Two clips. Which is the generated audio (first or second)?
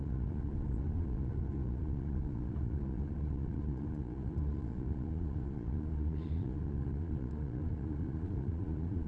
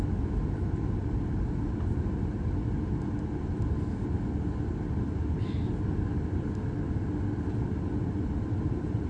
first